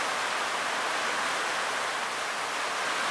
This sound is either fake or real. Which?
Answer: real